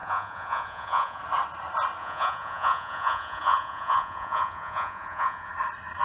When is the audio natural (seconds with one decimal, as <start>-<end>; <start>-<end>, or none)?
1.2-2.0; 5.5-6.0